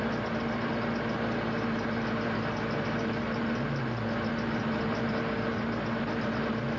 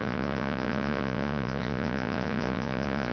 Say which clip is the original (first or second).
first